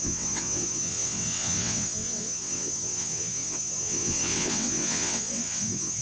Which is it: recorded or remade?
remade